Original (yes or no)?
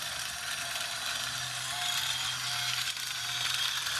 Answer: yes